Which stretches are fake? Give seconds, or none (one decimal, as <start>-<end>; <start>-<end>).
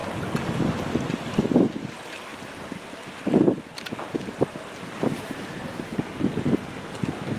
5.6-6.2